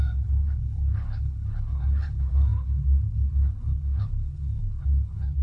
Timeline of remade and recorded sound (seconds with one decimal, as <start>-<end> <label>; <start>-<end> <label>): 0.0-5.4 remade